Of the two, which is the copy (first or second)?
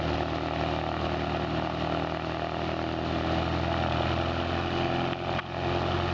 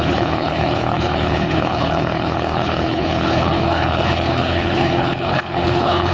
second